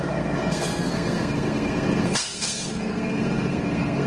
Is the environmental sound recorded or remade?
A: remade